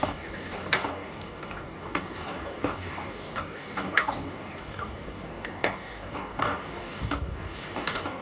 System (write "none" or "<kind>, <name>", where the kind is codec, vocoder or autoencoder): codec, DAC